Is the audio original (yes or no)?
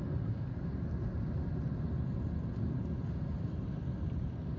yes